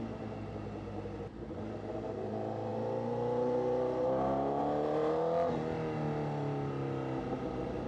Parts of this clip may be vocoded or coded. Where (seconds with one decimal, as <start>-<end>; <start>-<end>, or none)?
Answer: none